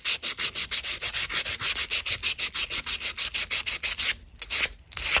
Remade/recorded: recorded